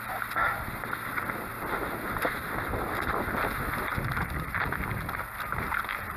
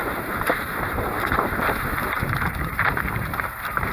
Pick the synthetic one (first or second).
second